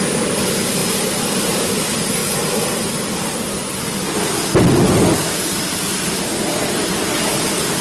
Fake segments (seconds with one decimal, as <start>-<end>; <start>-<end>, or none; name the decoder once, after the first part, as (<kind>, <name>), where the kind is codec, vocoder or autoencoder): 0.0-2.2 (vocoder, BigVGAN v2); 2.9-3.6; 7.1-7.8